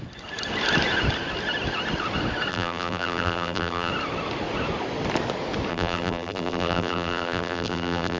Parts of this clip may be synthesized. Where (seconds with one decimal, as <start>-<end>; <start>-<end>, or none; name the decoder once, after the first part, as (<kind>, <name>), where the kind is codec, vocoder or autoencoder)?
2.5-3.9 (vocoder, BigVGAN v2); 5.7-8.2